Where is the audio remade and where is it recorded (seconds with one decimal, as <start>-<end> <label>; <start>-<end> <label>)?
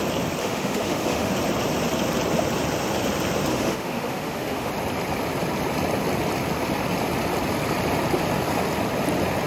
0.0-0.4 recorded; 0.4-1.3 remade; 1.3-3.5 recorded; 3.5-4.7 remade; 4.7-9.5 recorded